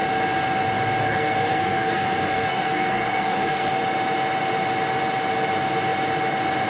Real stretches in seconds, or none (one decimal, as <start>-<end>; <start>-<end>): 0.0-1.0; 3.7-6.7